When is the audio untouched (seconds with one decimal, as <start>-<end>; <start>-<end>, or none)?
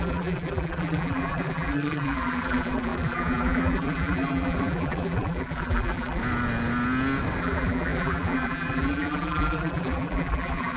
6.2-7.4